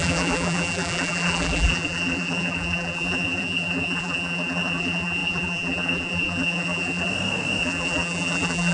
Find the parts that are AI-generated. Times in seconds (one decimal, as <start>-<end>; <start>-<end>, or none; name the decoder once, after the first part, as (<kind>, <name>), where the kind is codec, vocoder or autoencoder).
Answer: 0.0-7.1 (vocoder, BigVGAN v2); 7.6-8.7